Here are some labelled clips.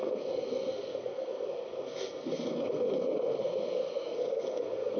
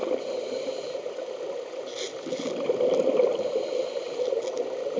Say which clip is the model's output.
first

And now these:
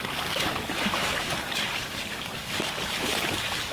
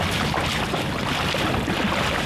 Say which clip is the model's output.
first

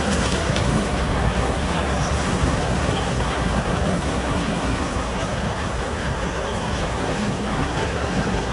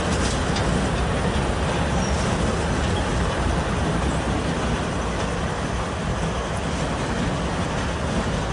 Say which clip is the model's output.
first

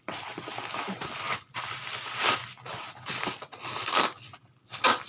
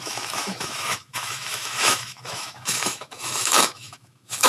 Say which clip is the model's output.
second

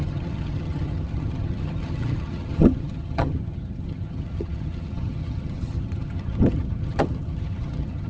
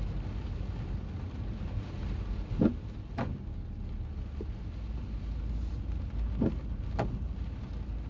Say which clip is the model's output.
first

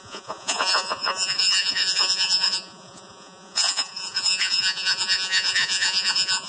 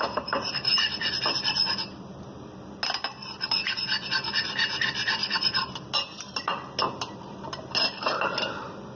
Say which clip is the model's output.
first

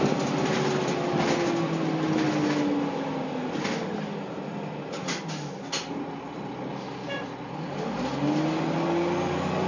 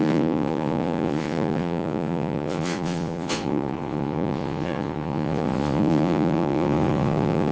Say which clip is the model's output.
second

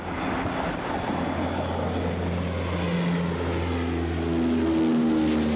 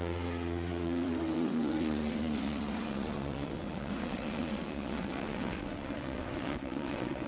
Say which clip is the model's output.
second